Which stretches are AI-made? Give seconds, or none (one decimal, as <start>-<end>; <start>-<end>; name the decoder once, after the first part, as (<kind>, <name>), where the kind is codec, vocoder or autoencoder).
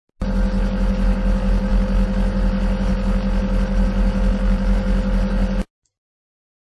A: none